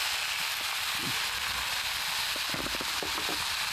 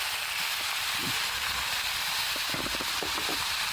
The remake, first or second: second